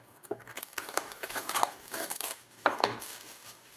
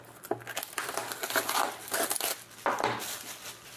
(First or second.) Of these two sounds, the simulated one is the first